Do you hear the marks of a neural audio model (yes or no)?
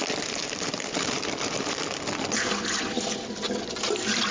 no